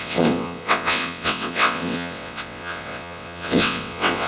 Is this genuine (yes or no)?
no